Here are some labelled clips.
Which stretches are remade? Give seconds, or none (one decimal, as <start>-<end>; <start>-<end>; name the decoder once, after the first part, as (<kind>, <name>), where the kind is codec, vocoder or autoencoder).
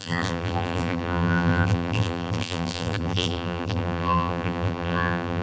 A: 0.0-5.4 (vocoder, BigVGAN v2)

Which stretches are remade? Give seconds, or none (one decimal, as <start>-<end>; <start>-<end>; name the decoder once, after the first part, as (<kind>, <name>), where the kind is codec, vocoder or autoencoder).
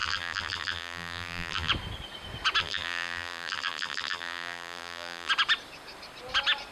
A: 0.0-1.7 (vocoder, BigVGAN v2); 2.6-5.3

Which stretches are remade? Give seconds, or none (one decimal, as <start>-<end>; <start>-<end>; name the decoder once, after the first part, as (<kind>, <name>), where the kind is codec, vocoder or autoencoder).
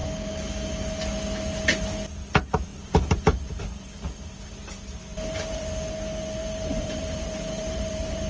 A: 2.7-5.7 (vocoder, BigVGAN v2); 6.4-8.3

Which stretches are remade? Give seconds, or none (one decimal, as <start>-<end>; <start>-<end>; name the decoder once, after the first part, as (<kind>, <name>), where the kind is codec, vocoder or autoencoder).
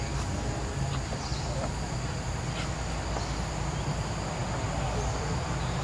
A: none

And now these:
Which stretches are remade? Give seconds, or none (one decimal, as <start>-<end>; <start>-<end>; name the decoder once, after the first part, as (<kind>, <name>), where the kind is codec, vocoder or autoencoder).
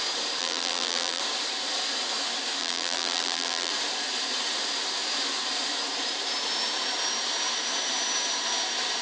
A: 0.4-1.2 (vocoder, BigVGAN v2); 2.6-3.7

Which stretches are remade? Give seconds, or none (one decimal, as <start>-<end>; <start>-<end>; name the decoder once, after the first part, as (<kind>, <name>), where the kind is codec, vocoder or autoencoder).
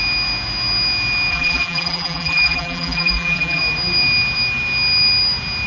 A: 1.3-3.6 (vocoder, BigVGAN v2)